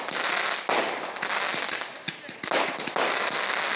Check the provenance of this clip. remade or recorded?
recorded